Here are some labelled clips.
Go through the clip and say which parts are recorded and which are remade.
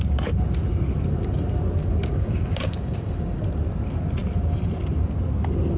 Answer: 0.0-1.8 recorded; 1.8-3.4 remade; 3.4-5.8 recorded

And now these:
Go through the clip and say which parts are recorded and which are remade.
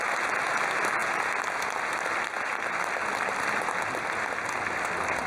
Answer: 0.0-5.3 recorded